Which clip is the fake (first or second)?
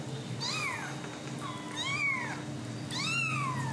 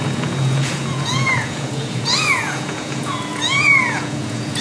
second